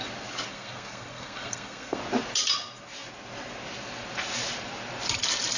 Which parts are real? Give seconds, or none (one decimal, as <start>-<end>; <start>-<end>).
0.0-0.5; 2.0-5.6